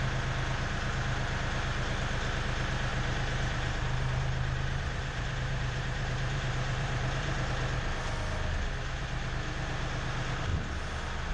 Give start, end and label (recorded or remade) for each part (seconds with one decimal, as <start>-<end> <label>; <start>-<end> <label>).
0.0-2.9 recorded; 2.9-7.5 remade; 7.5-11.3 recorded